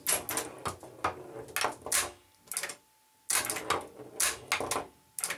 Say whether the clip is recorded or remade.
recorded